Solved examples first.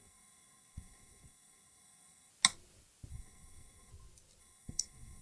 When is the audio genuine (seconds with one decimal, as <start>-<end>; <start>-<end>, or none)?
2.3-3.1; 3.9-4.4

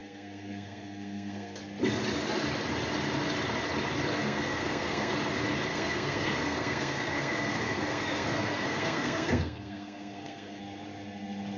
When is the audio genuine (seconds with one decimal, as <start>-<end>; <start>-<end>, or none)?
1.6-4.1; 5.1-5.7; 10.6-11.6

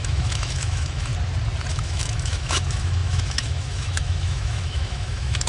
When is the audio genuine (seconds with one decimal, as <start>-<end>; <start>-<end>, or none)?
1.1-1.7

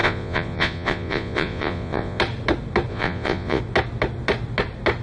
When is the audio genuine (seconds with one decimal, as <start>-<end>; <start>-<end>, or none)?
2.2-2.9; 3.6-5.0

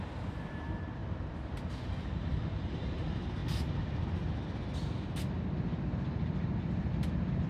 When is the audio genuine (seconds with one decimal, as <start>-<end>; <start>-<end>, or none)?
3.4-7.5

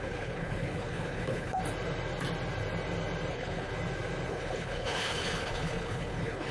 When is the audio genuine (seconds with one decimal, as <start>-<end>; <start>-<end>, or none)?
1.6-3.3; 3.7-4.3

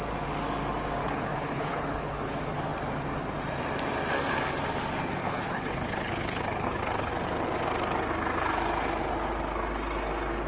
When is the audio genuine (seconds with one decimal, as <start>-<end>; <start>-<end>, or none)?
0.0-1.0; 2.6-5.2; 7.1-10.5

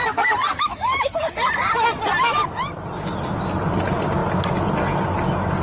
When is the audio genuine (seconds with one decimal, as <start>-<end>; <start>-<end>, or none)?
0.0-5.6